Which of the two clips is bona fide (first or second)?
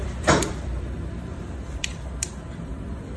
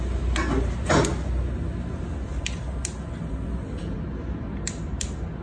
second